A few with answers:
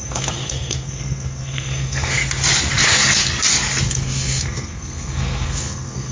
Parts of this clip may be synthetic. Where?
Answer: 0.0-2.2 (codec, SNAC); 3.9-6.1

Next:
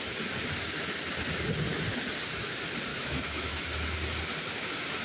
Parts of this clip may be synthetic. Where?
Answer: 2.9-3.6 (autoencoder, DAC-VAE)

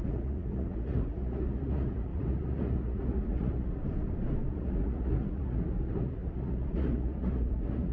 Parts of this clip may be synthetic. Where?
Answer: 0.0-3.8 (vocoder, Vocos); 4.5-7.9

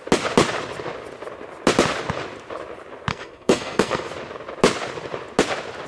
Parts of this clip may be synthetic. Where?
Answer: 3.1-4.1 (codec, SNAC)

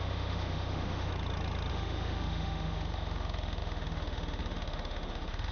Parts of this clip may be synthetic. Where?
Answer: 0.0-1.1 (autoencoder, DAC-VAE); 1.7-5.5

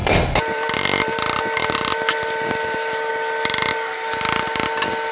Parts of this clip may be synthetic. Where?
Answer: none

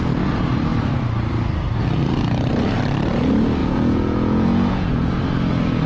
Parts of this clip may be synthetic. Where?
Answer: 3.6-4.9 (vocoder, Vocos)